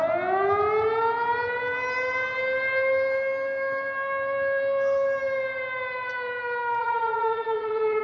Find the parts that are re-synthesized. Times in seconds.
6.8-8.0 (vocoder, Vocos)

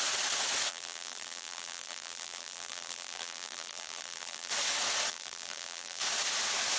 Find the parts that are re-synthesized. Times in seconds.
0.7-4.5 (vocoder, BigVGAN v2); 5.1-6.0

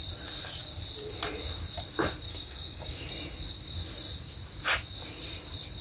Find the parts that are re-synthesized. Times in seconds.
2.3-3.1 (codec, DAC)

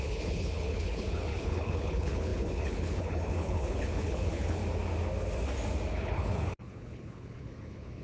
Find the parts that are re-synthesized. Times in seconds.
0.0-4.6 (codec, HILCodec); 5.9-8.0

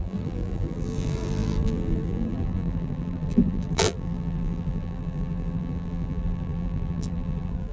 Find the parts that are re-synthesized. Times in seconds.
0.0-7.7 (vocoder, BigVGAN v2)

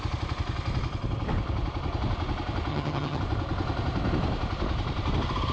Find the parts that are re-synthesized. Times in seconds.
2.7-3.2 (vocoder, HiFi-GAN)